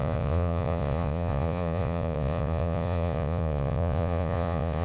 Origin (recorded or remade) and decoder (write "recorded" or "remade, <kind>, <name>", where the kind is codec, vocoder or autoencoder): remade, vocoder, Vocos